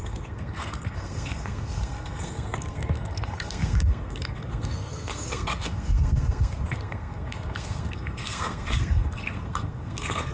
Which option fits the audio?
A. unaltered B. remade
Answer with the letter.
B